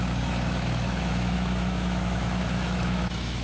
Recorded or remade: remade